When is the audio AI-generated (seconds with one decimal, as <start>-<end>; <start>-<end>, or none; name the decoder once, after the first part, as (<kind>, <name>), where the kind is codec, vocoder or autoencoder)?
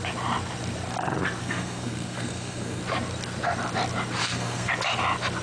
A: 1.4-2.8 (codec, SNAC); 4.2-4.7